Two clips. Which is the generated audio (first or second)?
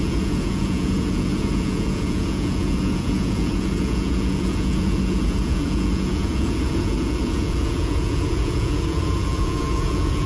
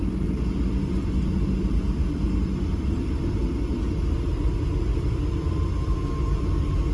first